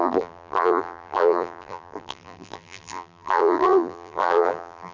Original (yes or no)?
no